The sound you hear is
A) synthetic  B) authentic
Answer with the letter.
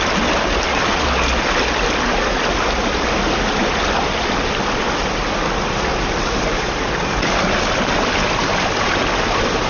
B